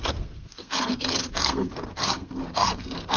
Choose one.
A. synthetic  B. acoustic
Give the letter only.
A